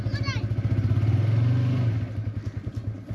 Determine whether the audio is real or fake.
real